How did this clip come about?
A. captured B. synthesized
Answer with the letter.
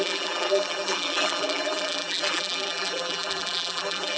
B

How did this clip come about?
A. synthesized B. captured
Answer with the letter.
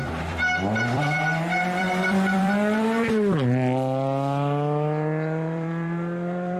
A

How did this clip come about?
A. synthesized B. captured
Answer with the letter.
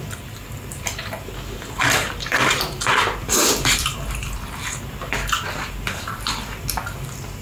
A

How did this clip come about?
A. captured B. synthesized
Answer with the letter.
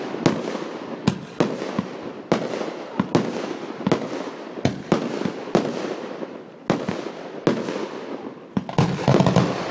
A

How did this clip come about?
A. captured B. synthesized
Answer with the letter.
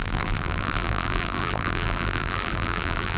B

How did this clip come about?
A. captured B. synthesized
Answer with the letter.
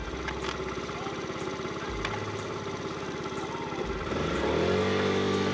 A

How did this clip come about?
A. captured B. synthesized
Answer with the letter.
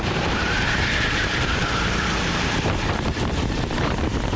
B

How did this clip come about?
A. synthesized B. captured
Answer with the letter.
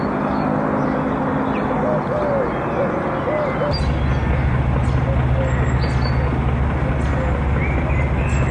B